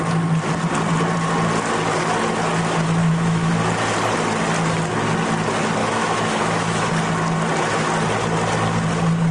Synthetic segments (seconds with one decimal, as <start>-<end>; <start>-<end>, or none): 3.0-3.6; 5.8-6.9